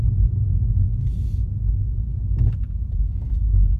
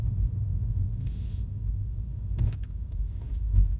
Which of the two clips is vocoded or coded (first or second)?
second